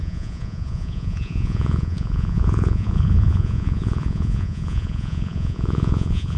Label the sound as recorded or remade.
remade